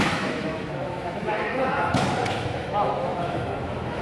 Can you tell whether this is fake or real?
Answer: fake